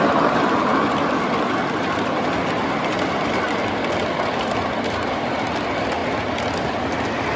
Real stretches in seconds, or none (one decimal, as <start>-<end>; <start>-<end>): 0.0-7.4